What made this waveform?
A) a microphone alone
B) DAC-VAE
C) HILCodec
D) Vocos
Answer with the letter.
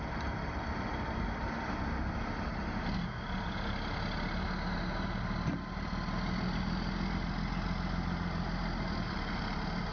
A